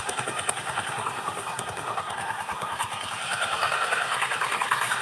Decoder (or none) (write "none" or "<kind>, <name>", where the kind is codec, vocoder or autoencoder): codec, SNAC